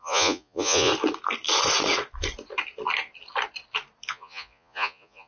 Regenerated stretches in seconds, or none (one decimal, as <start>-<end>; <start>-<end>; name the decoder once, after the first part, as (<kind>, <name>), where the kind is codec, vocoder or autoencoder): 0.0-0.9 (vocoder, Vocos); 4.1-5.3